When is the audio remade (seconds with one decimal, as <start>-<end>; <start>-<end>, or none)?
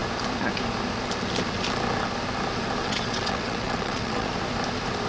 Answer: 2.8-4.3